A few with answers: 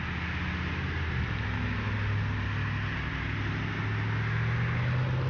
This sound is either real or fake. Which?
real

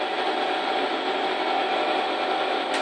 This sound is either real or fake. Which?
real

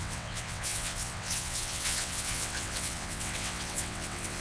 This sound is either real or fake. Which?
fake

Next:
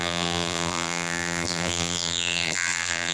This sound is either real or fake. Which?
fake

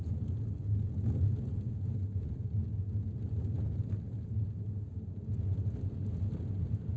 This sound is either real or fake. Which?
real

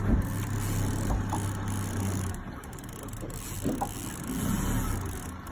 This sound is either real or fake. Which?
real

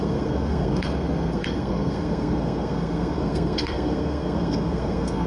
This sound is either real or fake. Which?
fake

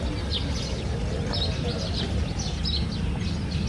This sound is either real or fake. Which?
real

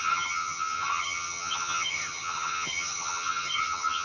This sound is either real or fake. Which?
fake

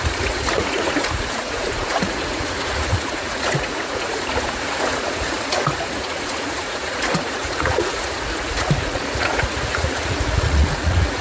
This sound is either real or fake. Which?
fake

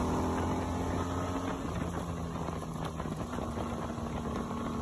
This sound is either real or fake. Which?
real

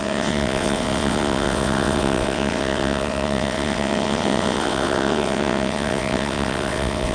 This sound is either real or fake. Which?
fake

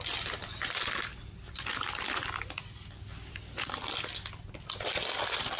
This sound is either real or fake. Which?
real